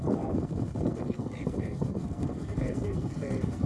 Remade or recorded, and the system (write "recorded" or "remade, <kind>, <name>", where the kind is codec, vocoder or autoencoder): remade, codec, SNAC